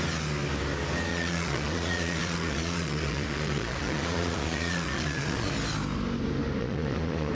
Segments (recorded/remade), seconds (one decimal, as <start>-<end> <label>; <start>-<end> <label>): 0.0-1.1 recorded; 1.1-5.5 remade; 5.5-6.6 recorded; 6.6-7.3 remade